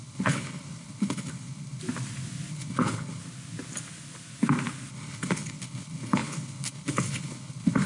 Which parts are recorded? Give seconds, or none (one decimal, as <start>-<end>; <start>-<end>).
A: 1.8-2.5; 3.2-4.9

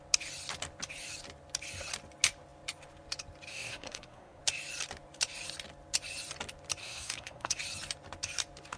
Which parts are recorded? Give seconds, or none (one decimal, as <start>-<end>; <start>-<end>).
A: 0.0-3.5; 4.4-6.8; 7.6-8.8

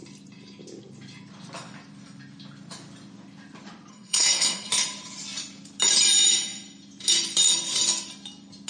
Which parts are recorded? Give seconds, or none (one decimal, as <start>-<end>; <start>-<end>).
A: 0.0-3.9; 4.7-8.7

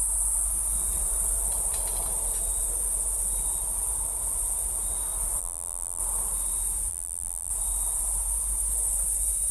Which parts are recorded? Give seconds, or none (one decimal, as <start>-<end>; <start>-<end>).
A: 0.0-5.4; 6.0-6.9; 7.5-9.5

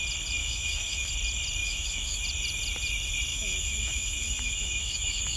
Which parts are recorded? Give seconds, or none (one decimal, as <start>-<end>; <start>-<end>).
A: 0.0-0.4; 1.1-1.6; 2.2-3.3

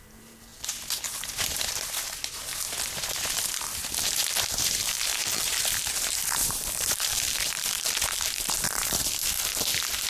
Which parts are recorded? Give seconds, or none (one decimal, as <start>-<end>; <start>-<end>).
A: 0.0-5.1; 9.0-10.1

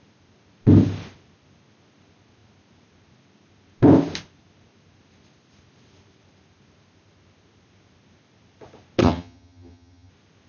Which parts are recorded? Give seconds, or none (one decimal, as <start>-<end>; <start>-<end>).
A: 0.0-9.0; 10.1-10.5

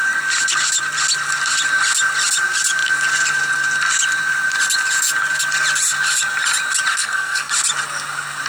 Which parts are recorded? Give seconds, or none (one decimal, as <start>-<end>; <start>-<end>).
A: 0.0-6.9; 7.5-8.5